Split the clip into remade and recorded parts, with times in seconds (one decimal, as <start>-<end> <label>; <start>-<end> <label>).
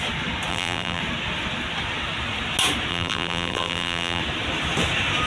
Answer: 0.0-0.5 recorded; 0.5-1.0 remade; 1.0-2.9 recorded; 2.9-4.2 remade; 4.2-5.3 recorded